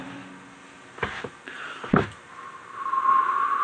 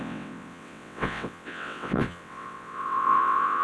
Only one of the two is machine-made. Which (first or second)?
second